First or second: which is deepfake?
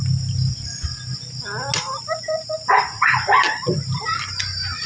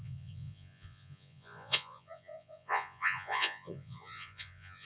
second